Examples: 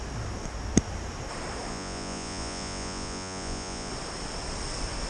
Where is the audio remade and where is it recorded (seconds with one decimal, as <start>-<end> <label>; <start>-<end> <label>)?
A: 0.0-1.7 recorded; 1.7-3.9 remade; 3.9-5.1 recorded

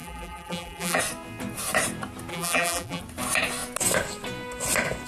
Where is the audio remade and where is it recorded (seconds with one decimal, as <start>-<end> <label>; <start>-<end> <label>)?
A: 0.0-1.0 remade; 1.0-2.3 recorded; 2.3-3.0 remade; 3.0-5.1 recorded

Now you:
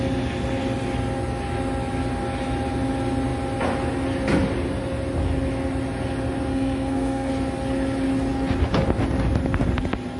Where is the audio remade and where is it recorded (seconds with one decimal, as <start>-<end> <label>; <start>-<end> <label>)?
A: 0.0-6.5 recorded; 6.5-7.3 remade; 7.3-10.2 recorded

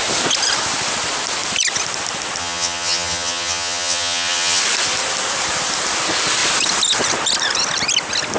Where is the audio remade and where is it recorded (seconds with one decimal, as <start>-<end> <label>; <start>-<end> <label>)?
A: 0.0-2.4 recorded; 2.4-4.6 remade; 4.6-8.4 recorded

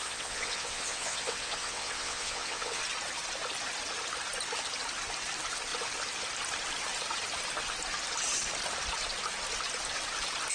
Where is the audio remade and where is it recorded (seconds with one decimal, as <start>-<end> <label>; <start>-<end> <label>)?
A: 0.0-2.8 remade; 2.8-10.5 recorded